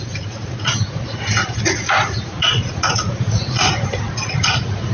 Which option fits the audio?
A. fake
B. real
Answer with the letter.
A